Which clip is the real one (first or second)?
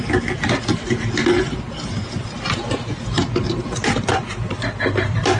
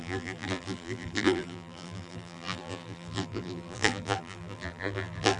first